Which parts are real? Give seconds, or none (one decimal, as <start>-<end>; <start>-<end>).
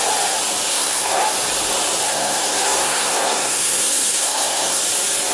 0.0-0.7; 1.2-2.1; 4.8-5.3